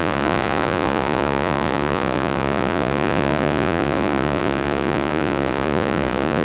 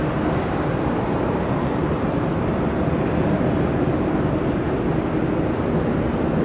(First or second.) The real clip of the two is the second